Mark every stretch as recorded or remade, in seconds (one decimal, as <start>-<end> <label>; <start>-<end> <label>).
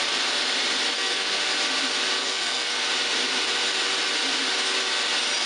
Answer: 0.0-0.9 recorded; 0.9-1.4 remade; 1.4-2.2 recorded; 2.2-2.9 remade; 2.9-5.5 recorded